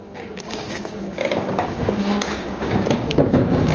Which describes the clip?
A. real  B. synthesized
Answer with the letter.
B